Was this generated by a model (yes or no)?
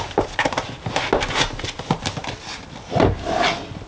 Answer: no